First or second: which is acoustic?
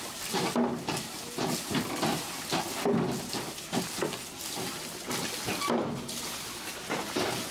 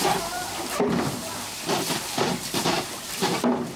first